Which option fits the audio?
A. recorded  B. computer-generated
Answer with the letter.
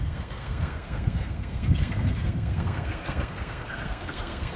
B